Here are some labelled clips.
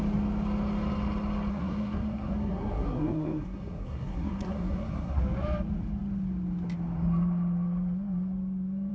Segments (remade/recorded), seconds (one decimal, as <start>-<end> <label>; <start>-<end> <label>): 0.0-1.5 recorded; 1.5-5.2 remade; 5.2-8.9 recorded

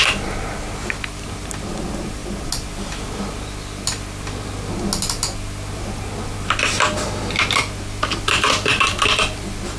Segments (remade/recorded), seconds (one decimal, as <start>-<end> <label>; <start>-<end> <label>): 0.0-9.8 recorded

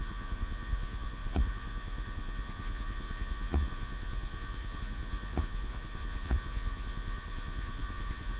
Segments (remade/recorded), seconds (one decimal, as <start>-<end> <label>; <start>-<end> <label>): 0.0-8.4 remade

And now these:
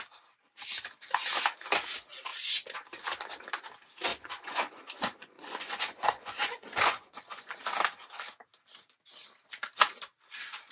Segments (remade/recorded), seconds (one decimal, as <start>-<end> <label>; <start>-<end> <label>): 0.0-4.1 recorded; 4.1-7.5 remade; 7.5-10.7 recorded

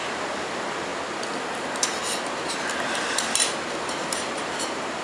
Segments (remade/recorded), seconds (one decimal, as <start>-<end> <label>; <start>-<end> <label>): 0.0-0.9 remade; 0.9-3.8 recorded; 3.8-5.0 remade

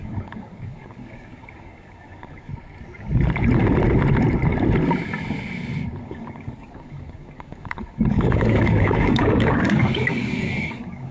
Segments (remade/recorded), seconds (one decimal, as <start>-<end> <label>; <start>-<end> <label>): 0.0-2.5 remade; 2.5-6.0 recorded; 6.0-11.1 remade

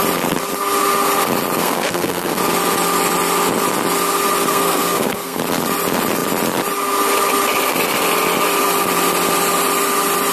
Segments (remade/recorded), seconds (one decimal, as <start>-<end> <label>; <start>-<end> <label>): 0.0-1.6 recorded; 1.6-2.4 remade; 2.4-4.5 recorded; 4.5-5.4 remade; 5.4-10.3 recorded

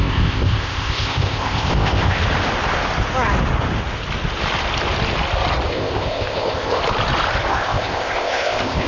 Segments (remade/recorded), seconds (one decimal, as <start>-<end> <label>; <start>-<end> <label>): 0.0-2.2 remade; 2.2-5.7 recorded; 5.7-6.8 remade; 6.8-7.5 recorded; 7.5-8.9 remade